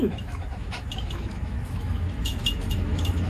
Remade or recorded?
remade